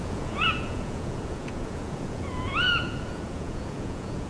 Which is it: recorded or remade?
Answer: remade